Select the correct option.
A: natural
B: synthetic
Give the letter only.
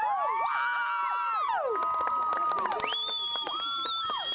A